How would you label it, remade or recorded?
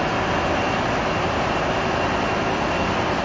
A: recorded